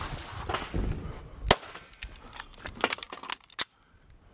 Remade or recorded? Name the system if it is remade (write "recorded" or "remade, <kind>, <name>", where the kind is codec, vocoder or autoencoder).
recorded